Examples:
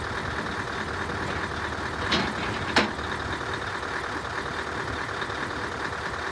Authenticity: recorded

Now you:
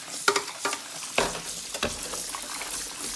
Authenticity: recorded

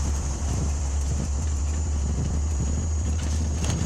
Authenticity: remade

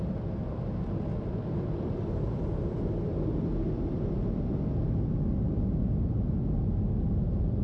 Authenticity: recorded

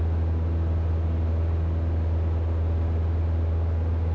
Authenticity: recorded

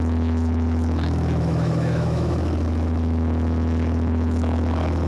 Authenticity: remade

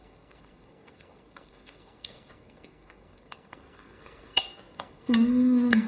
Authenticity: remade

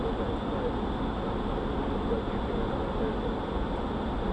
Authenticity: recorded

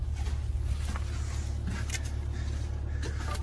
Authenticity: recorded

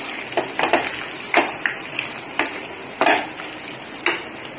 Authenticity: recorded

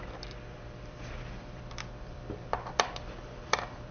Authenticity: remade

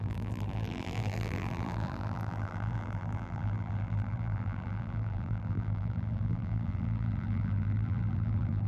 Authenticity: remade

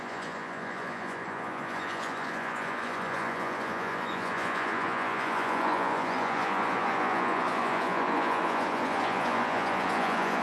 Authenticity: remade